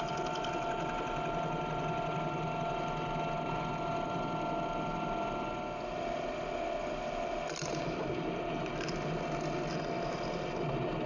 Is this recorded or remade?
recorded